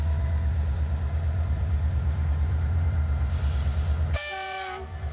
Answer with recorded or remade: remade